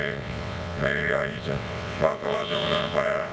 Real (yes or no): no